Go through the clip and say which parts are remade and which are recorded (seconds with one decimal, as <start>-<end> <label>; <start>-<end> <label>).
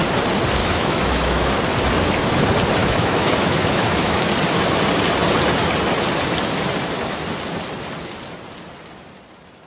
0.0-0.6 recorded; 0.6-1.6 remade; 1.6-2.8 recorded; 2.8-4.3 remade; 4.3-9.7 recorded